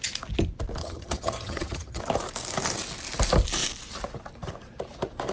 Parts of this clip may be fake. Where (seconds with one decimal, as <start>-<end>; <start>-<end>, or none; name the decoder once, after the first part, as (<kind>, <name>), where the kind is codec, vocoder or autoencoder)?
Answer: 0.8-2.0 (vocoder, HiFi-GAN)